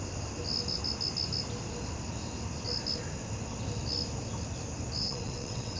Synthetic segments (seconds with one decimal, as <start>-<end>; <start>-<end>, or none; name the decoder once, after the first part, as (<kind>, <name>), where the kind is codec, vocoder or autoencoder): 5.0-5.8 (vocoder, WaveNeXt)